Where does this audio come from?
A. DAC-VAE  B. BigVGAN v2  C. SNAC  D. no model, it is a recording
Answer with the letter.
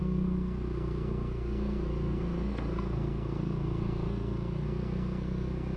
C